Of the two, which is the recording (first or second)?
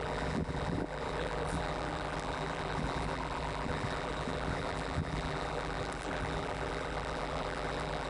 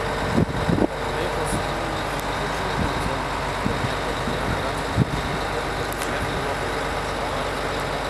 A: second